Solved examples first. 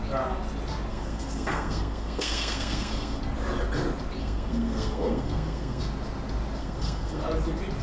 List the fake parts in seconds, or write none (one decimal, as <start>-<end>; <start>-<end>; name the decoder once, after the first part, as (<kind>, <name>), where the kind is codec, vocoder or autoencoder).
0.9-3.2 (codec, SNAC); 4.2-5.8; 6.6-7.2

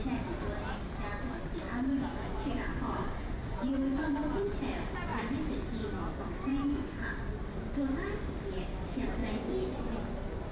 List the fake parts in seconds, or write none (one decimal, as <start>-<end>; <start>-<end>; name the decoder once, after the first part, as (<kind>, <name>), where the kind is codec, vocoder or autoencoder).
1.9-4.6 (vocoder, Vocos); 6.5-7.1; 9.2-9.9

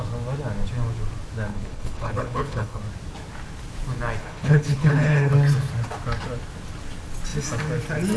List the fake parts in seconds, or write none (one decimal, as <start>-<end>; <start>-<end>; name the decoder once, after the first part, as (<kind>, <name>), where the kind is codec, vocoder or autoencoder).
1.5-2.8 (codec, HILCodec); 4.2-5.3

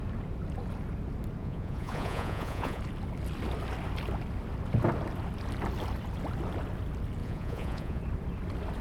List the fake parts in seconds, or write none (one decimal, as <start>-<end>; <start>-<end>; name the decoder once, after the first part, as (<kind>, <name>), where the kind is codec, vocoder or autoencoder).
1.4-2.8 (vocoder, Vocos); 7.2-8.0

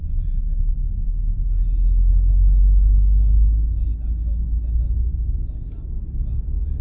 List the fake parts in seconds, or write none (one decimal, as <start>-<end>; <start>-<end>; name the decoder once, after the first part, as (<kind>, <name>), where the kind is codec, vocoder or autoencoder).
5.1-5.9 (codec, DAC)

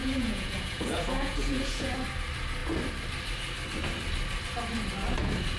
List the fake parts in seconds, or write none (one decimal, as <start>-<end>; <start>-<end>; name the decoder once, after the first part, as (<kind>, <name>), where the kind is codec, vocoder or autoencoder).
0.0-1.9 (vocoder, Vocos)